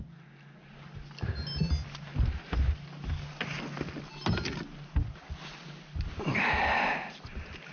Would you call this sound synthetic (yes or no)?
no